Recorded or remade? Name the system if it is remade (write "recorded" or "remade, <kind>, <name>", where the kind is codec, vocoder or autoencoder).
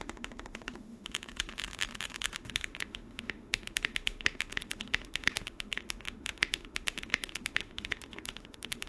remade, autoencoder, DAC-VAE